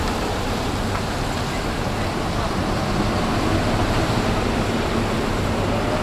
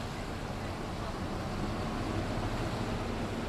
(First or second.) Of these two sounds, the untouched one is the second